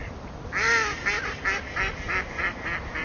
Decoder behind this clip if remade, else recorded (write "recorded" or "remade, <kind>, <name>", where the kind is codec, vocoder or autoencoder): recorded